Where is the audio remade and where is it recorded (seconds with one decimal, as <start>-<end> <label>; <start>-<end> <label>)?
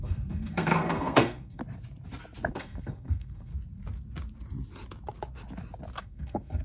0.0-1.6 remade; 1.6-2.5 recorded; 2.5-3.5 remade; 3.5-6.0 recorded; 6.0-6.6 remade